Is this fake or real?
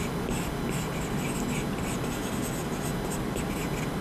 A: real